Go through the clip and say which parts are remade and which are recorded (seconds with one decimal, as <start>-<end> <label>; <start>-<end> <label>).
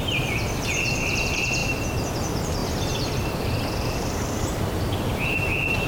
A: 0.0-5.9 remade